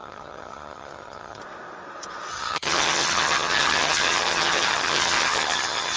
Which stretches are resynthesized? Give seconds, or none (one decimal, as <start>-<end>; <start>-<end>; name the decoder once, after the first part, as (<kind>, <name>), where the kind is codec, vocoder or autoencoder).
0.0-1.4 (vocoder, HiFi-GAN); 2.3-6.0